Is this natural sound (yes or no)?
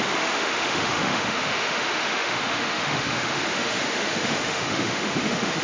no